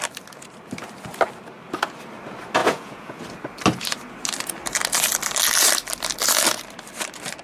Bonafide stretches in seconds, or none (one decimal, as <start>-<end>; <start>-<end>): 0.0-2.6; 3.2-7.4